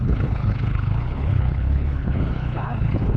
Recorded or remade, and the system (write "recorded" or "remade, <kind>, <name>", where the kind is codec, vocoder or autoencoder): remade, codec, HILCodec